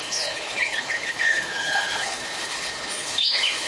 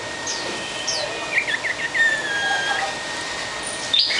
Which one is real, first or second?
second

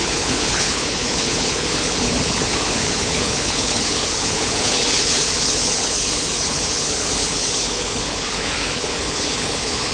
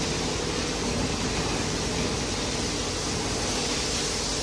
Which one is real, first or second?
second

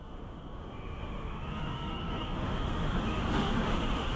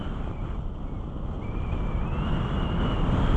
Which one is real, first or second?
second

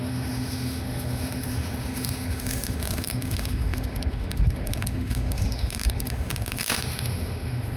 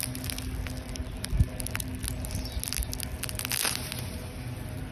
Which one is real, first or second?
second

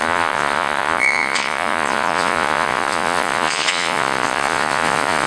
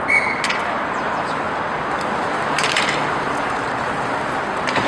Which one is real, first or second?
second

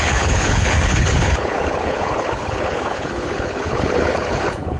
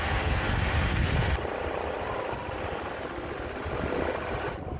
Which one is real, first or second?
second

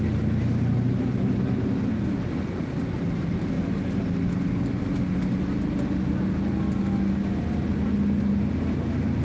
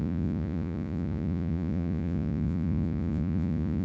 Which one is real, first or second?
first